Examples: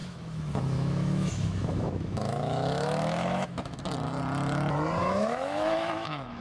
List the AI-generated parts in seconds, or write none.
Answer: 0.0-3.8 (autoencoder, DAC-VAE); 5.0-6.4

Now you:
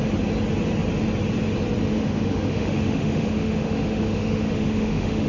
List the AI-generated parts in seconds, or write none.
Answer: 1.9-5.3 (autoencoder, DAC-VAE)